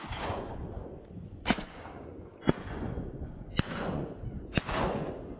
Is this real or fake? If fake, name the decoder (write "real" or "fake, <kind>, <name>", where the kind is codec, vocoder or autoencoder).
fake, vocoder, Vocos